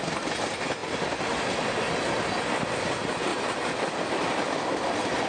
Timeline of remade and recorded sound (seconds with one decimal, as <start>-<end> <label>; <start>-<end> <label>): 0.0-3.3 recorded; 3.3-5.3 remade